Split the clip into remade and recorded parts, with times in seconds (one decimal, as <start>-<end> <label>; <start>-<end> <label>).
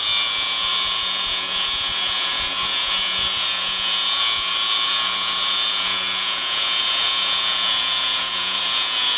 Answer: 0.0-9.2 remade